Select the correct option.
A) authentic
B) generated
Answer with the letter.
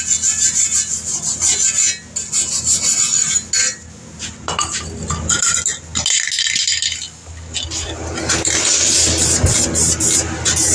A